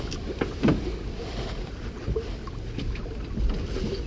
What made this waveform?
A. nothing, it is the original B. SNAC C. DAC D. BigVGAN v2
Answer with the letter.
A